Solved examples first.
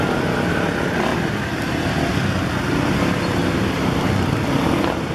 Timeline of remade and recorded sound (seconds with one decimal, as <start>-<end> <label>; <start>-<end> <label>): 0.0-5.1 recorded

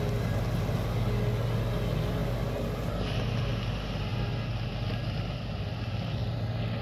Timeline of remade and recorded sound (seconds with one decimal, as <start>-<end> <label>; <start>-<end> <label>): 0.0-6.8 recorded

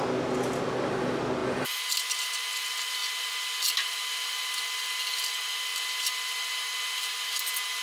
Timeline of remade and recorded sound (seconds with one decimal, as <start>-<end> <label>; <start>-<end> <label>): 0.0-7.8 recorded